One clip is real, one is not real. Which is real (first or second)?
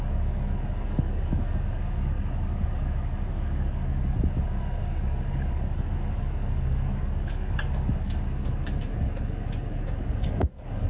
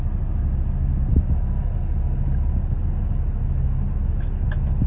second